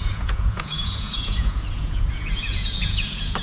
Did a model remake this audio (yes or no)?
yes